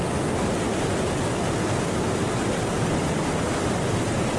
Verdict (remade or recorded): recorded